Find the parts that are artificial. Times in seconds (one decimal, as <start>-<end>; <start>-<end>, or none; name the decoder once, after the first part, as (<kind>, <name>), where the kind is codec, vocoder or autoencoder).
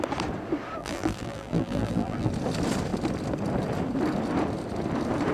0.8-2.3 (vocoder, BigVGAN v2)